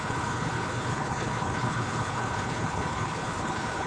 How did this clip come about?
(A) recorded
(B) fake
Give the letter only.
B